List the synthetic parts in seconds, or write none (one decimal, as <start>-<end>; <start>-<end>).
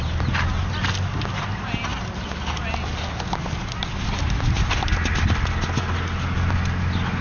none